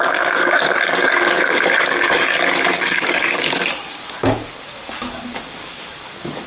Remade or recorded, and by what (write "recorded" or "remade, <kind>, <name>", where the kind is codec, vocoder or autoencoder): remade, codec, DAC